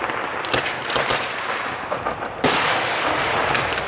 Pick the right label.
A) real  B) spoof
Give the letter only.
A